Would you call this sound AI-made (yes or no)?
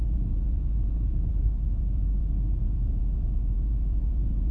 no